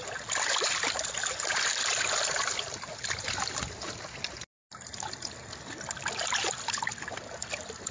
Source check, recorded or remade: recorded